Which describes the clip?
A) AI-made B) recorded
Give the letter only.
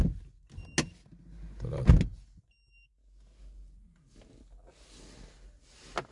B